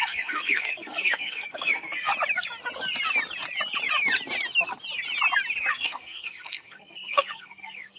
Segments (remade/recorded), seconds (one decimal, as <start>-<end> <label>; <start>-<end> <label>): 0.0-2.1 remade; 2.1-5.7 recorded; 5.7-8.0 remade